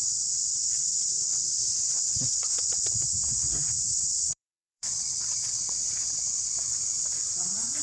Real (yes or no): no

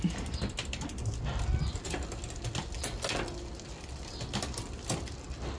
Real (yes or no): yes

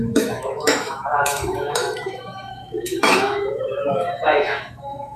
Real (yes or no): no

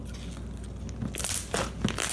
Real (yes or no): yes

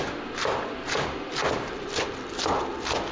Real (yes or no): yes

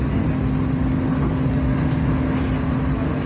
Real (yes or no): yes